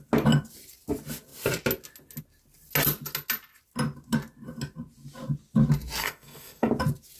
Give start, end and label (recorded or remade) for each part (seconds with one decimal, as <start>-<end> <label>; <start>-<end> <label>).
0.0-6.0 recorded; 6.0-6.7 remade; 6.7-7.2 recorded